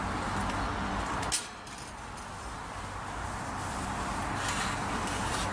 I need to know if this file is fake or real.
real